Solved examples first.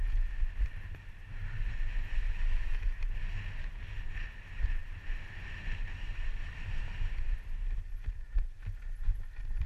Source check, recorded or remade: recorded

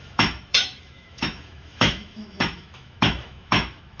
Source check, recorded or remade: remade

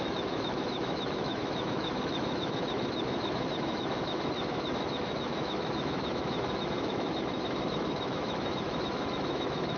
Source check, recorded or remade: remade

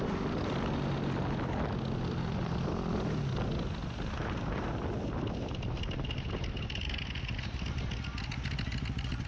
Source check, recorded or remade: recorded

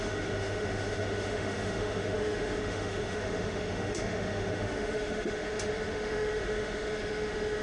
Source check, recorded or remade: remade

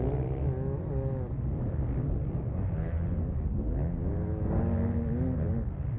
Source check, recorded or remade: recorded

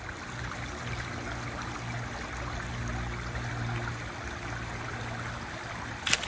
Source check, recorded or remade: recorded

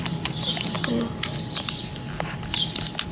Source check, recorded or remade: recorded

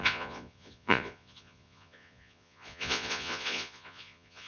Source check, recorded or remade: remade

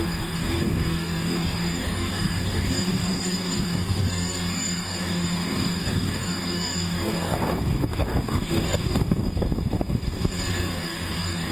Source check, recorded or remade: remade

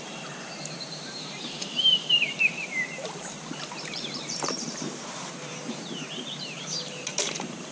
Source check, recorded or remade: remade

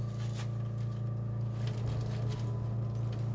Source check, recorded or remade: recorded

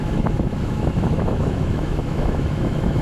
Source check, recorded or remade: remade